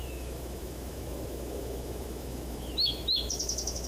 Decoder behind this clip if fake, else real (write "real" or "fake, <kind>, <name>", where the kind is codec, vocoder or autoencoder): fake, autoencoder, DAC-VAE